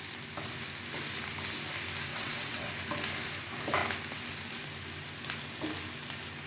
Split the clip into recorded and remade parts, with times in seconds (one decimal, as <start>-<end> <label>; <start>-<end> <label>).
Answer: 0.0-2.1 recorded; 2.1-2.7 remade; 2.7-6.5 recorded